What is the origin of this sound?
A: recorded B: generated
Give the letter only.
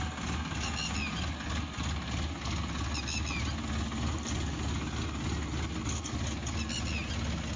A